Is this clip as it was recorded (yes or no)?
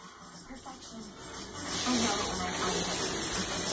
yes